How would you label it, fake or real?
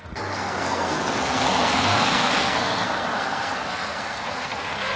fake